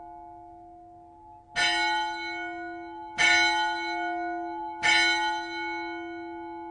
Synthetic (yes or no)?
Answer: no